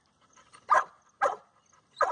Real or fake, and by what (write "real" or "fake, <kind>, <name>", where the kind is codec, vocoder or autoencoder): real